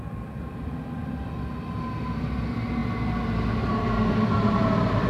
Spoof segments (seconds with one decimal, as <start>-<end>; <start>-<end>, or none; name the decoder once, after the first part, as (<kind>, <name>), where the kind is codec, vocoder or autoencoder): none